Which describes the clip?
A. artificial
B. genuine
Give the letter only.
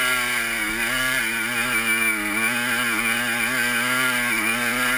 B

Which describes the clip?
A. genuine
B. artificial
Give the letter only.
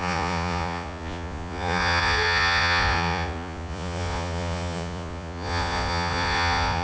B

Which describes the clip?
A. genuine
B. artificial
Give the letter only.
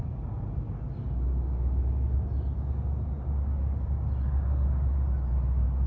A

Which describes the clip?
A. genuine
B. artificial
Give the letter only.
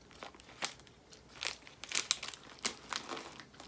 A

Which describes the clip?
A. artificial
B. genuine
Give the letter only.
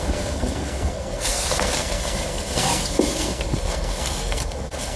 A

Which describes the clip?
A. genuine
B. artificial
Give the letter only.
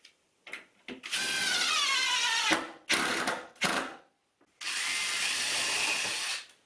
A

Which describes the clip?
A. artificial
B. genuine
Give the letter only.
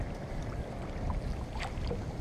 B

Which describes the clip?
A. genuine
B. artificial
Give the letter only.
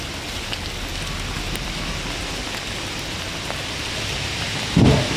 A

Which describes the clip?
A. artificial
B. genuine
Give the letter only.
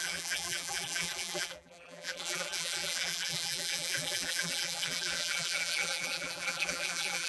A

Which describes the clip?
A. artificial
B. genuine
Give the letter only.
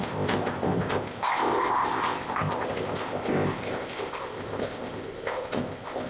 A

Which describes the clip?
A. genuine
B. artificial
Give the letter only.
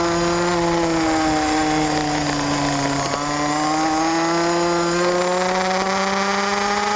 A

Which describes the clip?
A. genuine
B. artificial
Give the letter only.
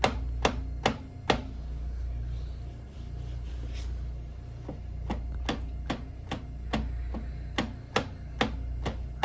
A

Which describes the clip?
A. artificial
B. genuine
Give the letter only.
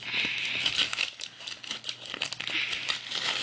B